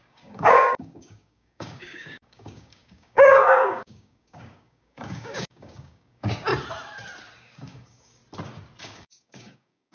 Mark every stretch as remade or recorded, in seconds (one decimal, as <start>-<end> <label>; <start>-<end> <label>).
0.0-6.5 remade; 6.5-7.4 recorded; 7.4-8.2 remade; 8.2-8.8 recorded; 8.8-9.9 remade